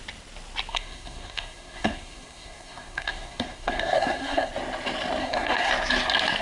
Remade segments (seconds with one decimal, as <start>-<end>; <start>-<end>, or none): 0.7-4.5; 5.2-5.7